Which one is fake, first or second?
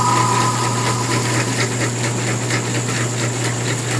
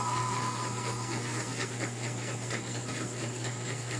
second